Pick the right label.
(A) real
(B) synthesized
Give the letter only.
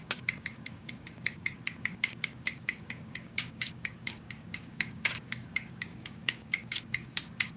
B